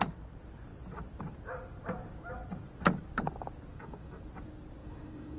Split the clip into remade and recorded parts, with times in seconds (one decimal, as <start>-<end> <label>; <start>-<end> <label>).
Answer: 0.0-3.7 recorded; 3.7-4.2 remade; 4.2-4.8 recorded; 4.8-5.4 remade

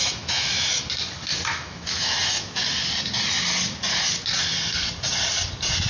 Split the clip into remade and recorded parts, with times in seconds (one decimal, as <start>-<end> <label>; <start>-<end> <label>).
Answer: 0.0-0.7 remade; 0.7-1.5 recorded; 1.5-2.6 remade; 2.6-5.9 recorded